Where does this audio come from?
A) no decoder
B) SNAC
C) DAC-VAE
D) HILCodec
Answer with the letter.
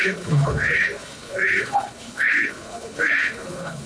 D